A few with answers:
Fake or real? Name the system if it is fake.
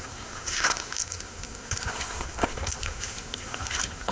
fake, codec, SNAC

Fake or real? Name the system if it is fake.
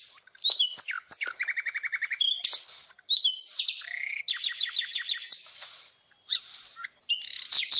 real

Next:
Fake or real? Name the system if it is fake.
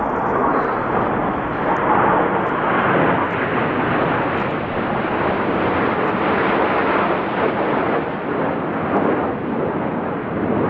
real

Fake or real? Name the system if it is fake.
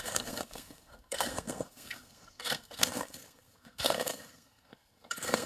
fake, codec, SNAC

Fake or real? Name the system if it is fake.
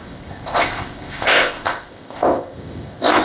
fake, codec, ZipCodec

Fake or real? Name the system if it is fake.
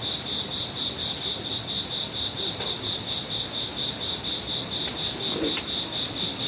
real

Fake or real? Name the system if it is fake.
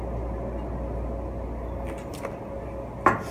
real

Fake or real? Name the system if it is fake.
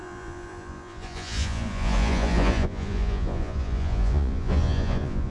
fake, vocoder, Vocos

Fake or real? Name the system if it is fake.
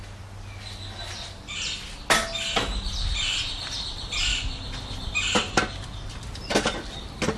real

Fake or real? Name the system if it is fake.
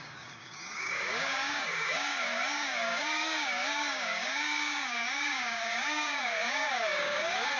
fake, codec, DAC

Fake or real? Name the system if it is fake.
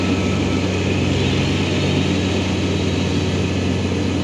real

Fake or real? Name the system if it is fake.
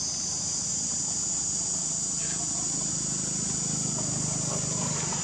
real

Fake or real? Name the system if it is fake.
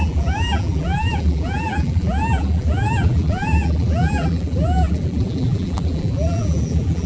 fake, vocoder, BigVGAN v2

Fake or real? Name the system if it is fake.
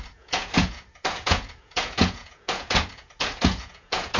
fake, vocoder, Vocos